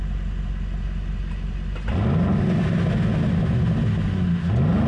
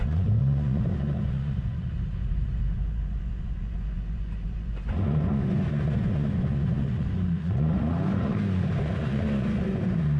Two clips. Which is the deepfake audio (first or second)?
second